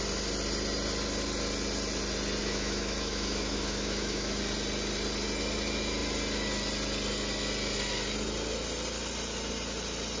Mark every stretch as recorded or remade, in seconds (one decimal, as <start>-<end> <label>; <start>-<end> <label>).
0.0-2.4 recorded; 2.4-4.4 remade; 4.4-10.2 recorded